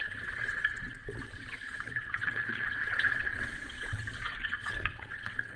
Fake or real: fake